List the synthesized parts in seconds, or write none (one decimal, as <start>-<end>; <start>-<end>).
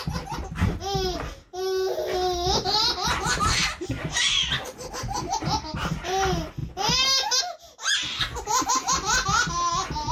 none